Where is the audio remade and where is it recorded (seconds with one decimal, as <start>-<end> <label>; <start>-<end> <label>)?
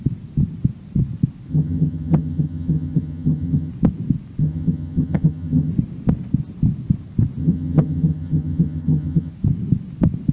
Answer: 0.0-1.5 recorded; 1.5-3.7 remade; 3.7-4.4 recorded; 4.4-5.7 remade; 5.7-7.4 recorded; 7.4-9.3 remade; 9.3-10.3 recorded